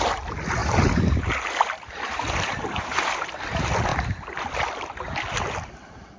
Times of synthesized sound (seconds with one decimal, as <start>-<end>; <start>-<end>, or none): none